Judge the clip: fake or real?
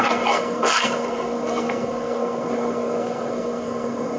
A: fake